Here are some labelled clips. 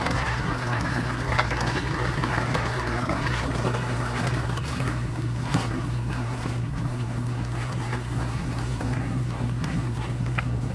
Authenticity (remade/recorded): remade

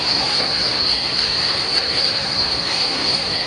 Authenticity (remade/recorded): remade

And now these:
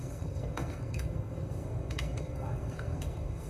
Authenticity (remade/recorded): remade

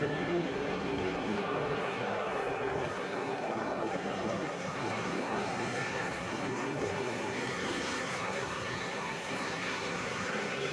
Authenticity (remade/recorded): remade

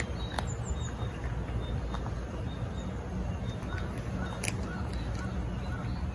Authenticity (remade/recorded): recorded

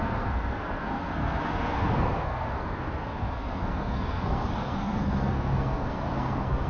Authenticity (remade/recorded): remade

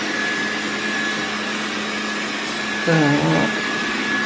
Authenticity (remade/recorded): recorded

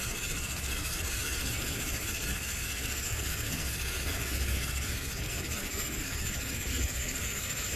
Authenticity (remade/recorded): remade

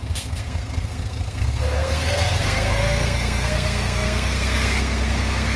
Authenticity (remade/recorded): remade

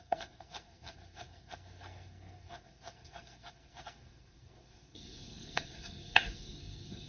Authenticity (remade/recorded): remade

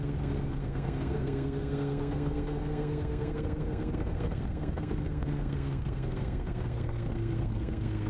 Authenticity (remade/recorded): remade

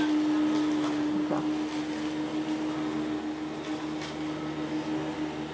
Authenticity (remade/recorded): recorded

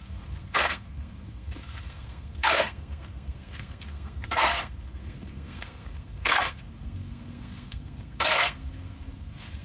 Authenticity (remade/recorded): remade